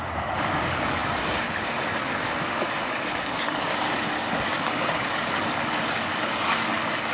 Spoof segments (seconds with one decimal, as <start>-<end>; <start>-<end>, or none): 0.0-7.1